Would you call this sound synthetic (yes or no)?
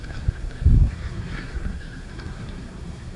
yes